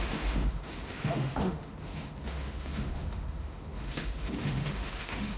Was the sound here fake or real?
fake